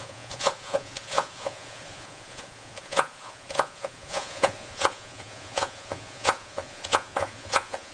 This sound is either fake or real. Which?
fake